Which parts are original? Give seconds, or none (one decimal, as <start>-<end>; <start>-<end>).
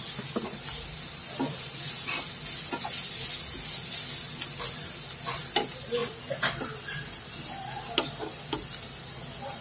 0.0-9.6